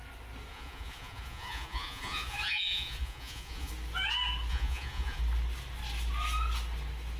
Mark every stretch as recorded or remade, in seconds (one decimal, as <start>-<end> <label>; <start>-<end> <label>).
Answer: 0.0-0.5 recorded; 0.5-3.7 remade; 3.7-4.5 recorded; 4.5-5.2 remade; 5.2-7.2 recorded